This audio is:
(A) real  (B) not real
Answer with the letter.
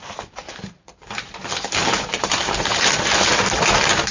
B